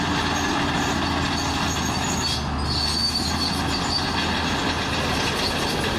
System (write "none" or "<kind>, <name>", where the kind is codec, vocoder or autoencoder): none